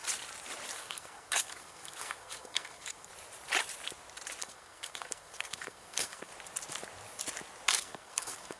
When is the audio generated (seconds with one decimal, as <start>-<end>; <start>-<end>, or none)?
0.8-3.1; 4.4-6.3; 7.7-8.6